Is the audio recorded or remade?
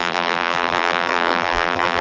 remade